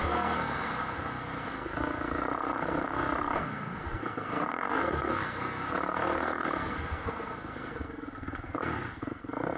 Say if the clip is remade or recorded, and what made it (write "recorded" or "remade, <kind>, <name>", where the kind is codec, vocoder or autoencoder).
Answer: remade, codec, SNAC